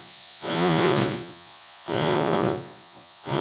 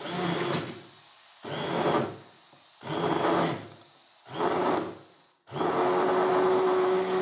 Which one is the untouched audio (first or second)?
second